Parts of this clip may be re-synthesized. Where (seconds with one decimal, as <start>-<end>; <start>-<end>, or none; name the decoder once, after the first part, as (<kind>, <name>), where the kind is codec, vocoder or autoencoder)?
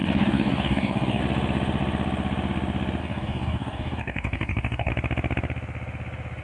0.0-1.2 (codec, DAC); 3.0-4.9